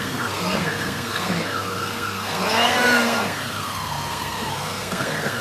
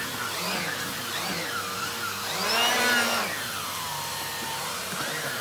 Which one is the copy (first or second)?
first